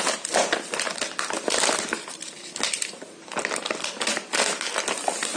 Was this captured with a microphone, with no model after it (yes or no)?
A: yes